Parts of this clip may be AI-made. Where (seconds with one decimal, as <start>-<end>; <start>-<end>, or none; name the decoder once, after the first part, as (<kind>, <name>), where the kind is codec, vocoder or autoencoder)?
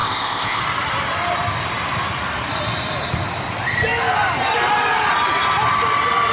0.0-0.6 (codec, ZipCodec)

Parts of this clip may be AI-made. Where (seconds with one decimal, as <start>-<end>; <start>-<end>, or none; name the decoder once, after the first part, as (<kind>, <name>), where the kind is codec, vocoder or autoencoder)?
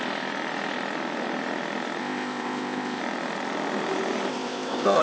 2.0-3.0 (codec, ZipCodec); 4.3-5.0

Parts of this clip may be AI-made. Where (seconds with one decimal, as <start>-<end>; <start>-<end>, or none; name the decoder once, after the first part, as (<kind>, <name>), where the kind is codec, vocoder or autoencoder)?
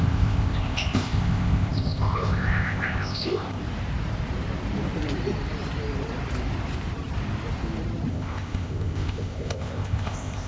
0.0-3.6 (codec, ZipCodec); 8.1-10.5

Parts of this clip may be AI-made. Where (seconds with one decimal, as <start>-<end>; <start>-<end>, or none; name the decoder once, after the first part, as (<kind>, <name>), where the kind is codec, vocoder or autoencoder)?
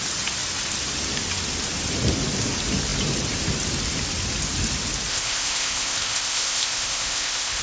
5.1-7.6 (codec, ZipCodec)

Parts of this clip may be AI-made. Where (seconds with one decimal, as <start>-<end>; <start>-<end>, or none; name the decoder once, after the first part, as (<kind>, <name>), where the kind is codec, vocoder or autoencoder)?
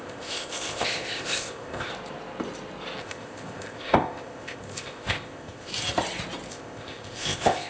0.0-1.9 (codec, ZipCodec); 3.0-5.7; 6.5-7.7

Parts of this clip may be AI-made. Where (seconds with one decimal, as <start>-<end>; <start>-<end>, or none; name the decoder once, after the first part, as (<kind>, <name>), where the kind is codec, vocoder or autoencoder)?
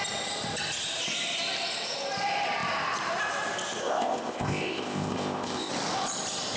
3.8-5.7 (codec, ZipCodec)